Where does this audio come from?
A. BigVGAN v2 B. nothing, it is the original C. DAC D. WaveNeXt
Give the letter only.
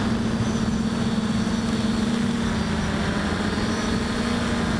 B